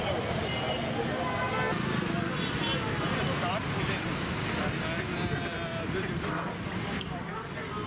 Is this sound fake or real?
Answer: real